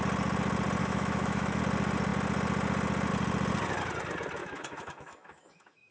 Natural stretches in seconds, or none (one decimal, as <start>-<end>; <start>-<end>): 0.0-0.8; 1.6-4.4